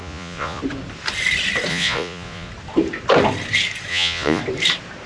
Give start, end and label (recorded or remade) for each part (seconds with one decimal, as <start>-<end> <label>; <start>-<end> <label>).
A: 0.0-0.6 remade; 0.6-1.7 recorded; 1.7-2.5 remade; 2.5-3.9 recorded; 3.9-4.4 remade; 4.4-5.1 recorded